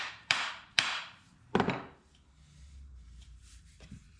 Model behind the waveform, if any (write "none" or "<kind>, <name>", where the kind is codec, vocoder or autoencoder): vocoder, BigVGAN v2